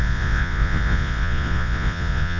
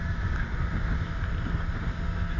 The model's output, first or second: first